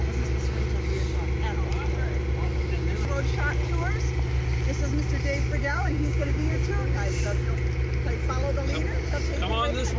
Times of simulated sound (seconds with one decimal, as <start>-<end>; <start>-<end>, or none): 5.6-6.5